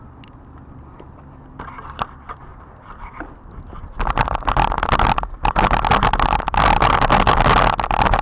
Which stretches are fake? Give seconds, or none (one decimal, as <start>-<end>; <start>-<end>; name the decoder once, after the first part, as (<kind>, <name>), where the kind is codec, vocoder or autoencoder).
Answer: none